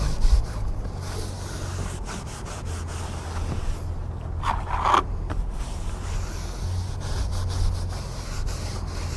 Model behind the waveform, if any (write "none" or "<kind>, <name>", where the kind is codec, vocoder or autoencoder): none